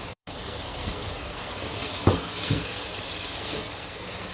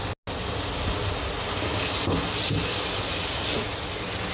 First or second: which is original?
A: second